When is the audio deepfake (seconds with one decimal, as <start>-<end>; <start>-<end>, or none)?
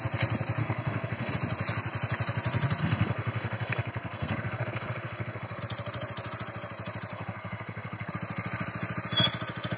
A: 0.6-1.3; 2.8-5.6; 7.1-8.1